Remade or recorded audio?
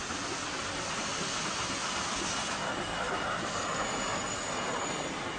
recorded